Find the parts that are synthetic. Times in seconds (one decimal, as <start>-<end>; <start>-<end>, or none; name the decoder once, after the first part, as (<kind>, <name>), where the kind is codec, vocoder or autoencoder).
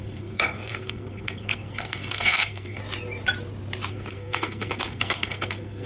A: 0.0-2.8 (codec, SNAC); 3.9-5.9